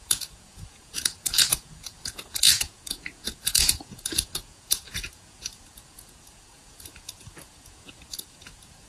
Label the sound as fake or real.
fake